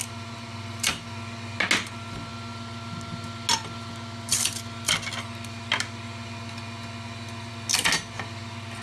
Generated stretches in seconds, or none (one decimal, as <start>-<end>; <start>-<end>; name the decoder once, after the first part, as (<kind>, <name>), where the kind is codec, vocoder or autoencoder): none